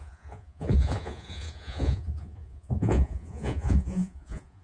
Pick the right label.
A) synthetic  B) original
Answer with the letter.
A